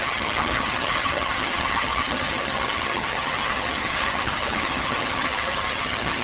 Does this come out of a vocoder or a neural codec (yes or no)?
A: yes